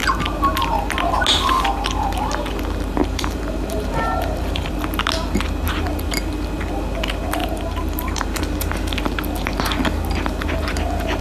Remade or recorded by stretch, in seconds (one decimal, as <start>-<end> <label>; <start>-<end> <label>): 0.0-3.0 recorded; 3.0-4.7 remade; 4.7-7.4 recorded; 7.4-8.4 remade; 8.4-11.2 recorded

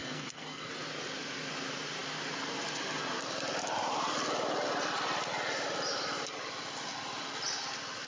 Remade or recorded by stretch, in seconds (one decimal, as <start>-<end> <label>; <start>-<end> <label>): 0.0-0.7 remade; 0.7-8.1 recorded

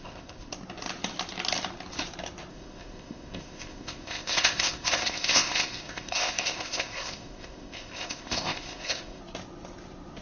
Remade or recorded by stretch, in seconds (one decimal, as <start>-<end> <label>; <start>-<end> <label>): 0.0-0.5 remade; 0.5-2.5 recorded; 2.5-9.2 remade; 9.2-10.2 recorded

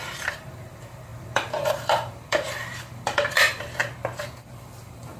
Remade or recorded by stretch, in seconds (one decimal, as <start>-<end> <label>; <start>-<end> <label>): 0.0-3.8 remade; 3.8-4.4 recorded; 4.4-5.2 remade